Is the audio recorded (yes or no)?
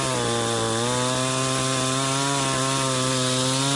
yes